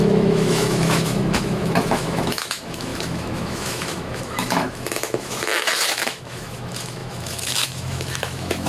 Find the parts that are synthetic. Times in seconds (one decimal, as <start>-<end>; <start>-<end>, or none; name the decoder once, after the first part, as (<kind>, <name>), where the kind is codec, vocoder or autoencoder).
0.0-8.7 (autoencoder, DAC-VAE)